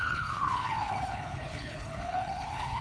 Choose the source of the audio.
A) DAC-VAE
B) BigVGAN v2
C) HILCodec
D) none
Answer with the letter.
C